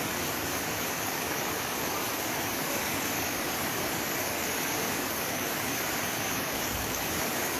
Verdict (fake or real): fake